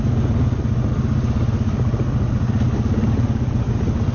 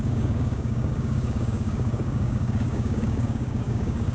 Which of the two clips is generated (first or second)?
second